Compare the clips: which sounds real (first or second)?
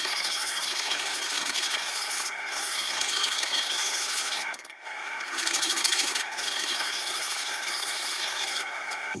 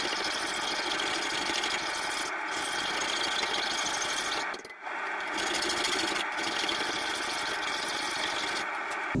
second